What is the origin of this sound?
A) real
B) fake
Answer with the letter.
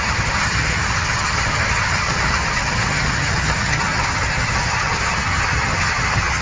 B